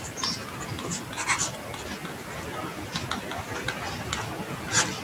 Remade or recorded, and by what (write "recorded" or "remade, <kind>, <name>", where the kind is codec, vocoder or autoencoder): recorded